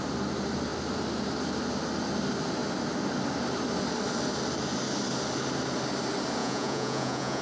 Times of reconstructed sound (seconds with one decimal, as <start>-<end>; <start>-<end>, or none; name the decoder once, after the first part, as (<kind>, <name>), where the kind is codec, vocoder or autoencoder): 6.4-7.4 (vocoder, Vocos)